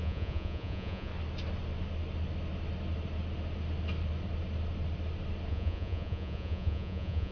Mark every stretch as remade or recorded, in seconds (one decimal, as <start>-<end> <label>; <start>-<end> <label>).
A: 0.0-1.1 remade; 1.1-5.5 recorded; 5.5-7.3 remade